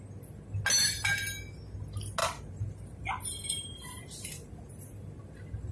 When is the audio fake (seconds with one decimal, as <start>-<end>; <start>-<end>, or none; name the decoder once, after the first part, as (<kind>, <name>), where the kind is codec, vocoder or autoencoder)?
2.2-5.7 (vocoder, BigVGAN v2)